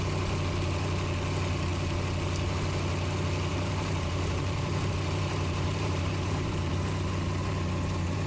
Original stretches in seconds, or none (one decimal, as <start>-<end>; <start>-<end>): 0.0-3.5; 6.7-8.3

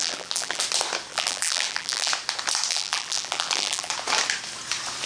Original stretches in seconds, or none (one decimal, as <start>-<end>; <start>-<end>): 0.6-1.1; 2.1-2.7; 3.9-5.1

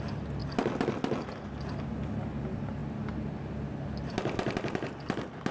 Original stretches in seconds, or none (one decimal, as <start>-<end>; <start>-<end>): 0.0-5.5

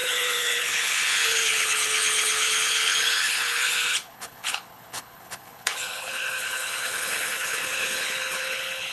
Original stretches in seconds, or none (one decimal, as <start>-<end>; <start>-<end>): none

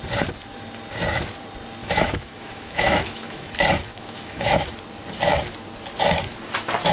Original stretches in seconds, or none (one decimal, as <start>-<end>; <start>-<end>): 0.0-1.8; 3.5-3.9; 4.7-6.9